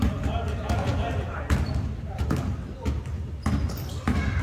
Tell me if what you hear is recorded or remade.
recorded